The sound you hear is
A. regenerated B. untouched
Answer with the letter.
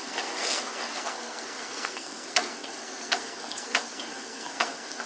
A